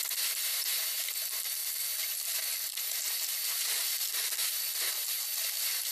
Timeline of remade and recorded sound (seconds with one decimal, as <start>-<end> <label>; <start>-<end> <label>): 0.0-5.9 recorded